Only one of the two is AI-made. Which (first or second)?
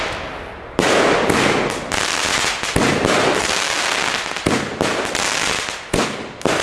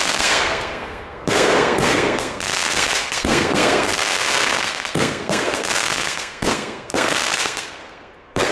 second